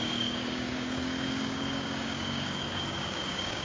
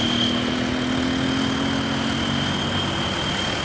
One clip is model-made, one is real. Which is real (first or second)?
second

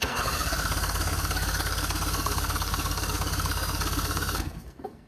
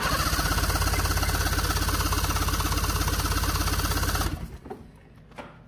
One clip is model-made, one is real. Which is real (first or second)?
second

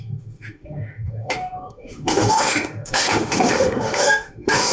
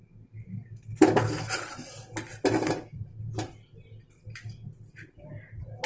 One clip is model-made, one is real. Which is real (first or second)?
second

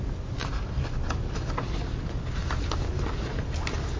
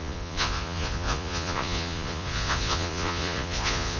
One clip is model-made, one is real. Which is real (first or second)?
first